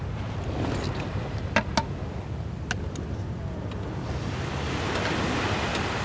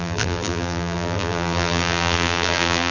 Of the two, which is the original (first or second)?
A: first